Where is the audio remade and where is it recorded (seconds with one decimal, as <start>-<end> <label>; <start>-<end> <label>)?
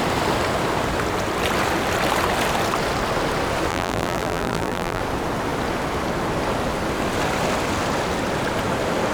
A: 0.0-3.7 recorded; 3.7-5.0 remade; 5.0-9.1 recorded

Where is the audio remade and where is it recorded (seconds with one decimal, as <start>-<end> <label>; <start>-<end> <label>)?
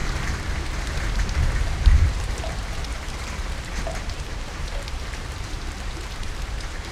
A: 0.0-1.0 recorded; 1.0-6.9 remade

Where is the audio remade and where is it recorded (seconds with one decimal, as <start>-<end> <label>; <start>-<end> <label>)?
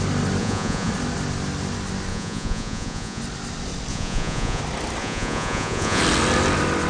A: 0.0-0.4 recorded; 0.4-0.9 remade; 0.9-2.1 recorded; 2.1-3.2 remade; 3.2-3.9 recorded; 3.9-4.6 remade; 4.6-5.0 recorded; 5.0-6.0 remade; 6.0-6.9 recorded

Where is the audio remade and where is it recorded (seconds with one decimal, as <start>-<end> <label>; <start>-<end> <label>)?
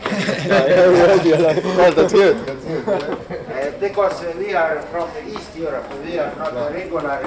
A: 0.0-7.3 recorded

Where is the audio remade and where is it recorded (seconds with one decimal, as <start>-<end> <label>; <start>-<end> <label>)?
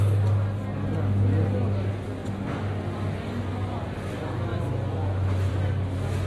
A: 0.0-6.3 recorded